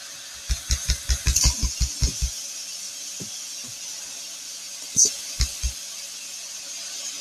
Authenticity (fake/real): real